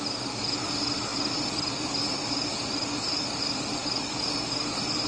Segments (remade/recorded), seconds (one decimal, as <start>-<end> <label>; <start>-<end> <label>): 0.0-1.1 recorded; 1.1-4.2 remade; 4.2-5.1 recorded